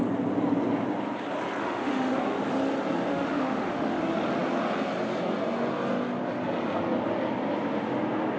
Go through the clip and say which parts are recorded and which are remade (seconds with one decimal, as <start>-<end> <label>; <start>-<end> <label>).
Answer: 0.0-1.6 recorded; 1.6-2.2 remade; 2.2-3.1 recorded; 3.1-4.0 remade; 4.0-8.4 recorded